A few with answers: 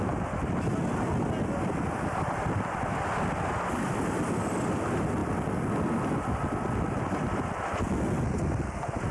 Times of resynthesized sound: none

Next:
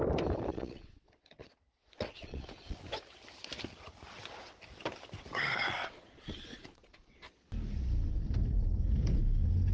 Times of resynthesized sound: 0.5-2.8 (vocoder, Vocos); 5.6-7.5